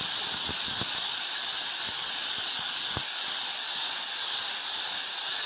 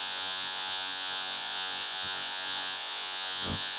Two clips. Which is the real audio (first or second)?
first